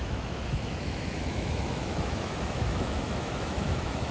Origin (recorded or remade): remade